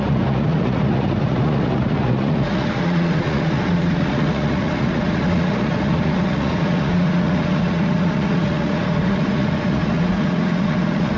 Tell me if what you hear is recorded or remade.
remade